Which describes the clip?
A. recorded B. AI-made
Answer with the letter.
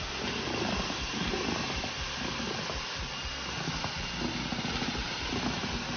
A